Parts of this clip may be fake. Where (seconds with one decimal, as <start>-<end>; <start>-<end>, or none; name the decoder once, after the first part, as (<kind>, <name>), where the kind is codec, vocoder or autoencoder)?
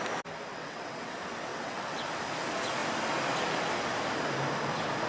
0.5-1.1 (vocoder, WaveNeXt); 1.5-2.0